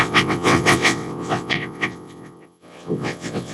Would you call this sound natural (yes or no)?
no